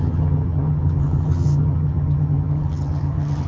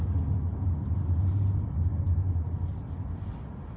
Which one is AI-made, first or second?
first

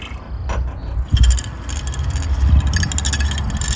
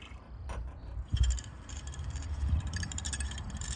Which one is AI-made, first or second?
second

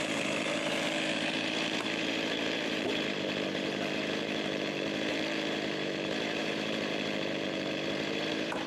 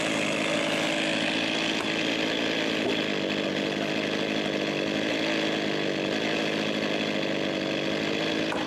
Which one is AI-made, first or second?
first